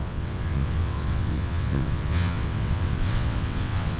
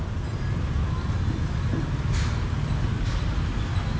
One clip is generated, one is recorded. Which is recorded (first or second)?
second